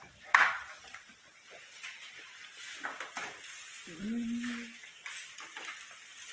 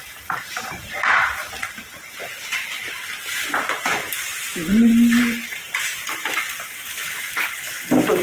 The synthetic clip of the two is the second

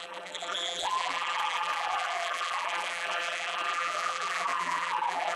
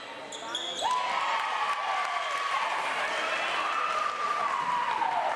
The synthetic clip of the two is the first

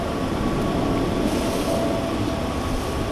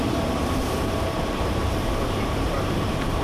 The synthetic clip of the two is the second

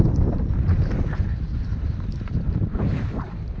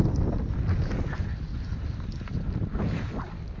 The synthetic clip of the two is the first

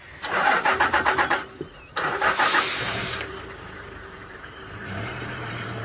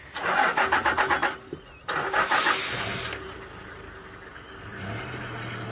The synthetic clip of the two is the first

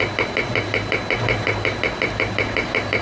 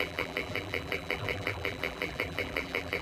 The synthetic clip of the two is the second